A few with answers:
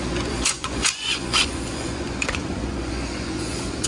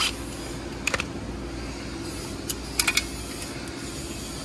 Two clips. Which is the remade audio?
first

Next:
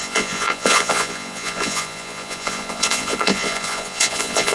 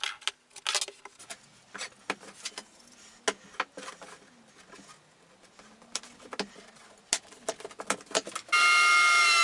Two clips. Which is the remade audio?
first